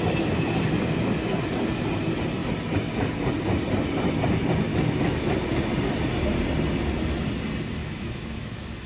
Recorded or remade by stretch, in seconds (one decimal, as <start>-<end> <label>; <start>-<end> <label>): 0.0-4.7 recorded; 4.7-5.3 remade; 5.3-7.8 recorded; 7.8-8.9 remade